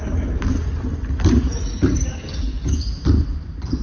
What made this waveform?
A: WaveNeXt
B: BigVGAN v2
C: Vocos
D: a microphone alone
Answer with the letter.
B